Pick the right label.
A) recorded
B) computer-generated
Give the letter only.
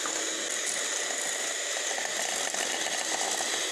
A